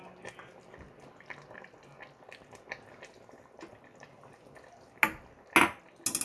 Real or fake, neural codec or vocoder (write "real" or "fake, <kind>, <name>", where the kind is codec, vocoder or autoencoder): real